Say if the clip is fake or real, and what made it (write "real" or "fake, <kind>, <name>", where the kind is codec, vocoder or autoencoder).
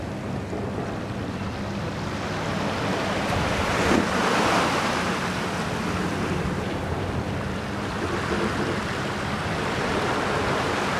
real